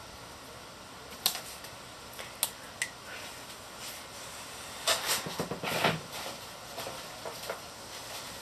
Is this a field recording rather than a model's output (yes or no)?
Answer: yes